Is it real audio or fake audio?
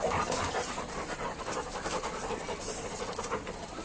real